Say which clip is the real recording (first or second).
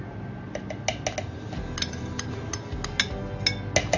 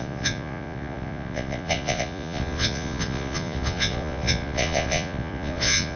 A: first